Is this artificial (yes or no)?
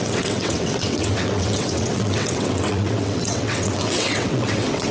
yes